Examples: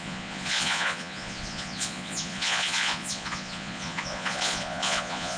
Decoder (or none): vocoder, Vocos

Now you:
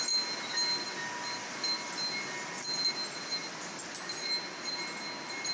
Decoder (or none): none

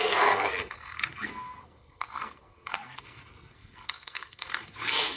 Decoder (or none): codec, SNAC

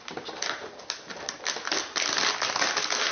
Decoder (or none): none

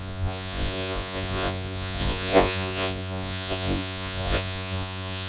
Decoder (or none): vocoder, Vocos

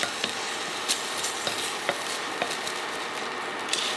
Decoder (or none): none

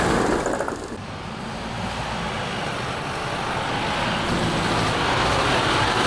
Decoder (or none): none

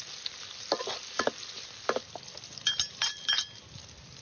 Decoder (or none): none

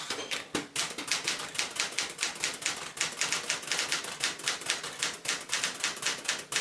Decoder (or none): none